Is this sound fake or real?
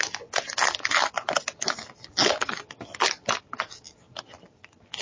real